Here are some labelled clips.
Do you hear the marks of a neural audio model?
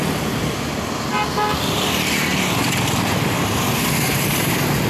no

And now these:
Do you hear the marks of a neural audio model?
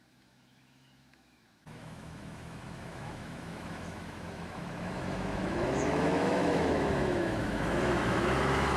yes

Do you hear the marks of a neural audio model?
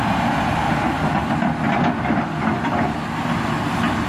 no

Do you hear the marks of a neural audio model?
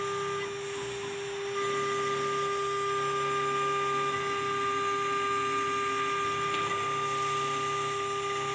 no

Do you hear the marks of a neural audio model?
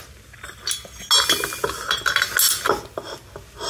no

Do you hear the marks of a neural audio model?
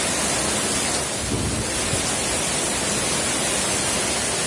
no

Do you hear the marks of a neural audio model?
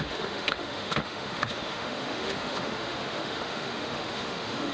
yes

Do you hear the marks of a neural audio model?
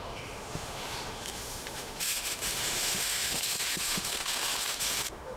yes